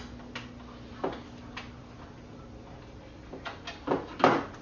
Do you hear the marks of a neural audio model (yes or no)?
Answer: no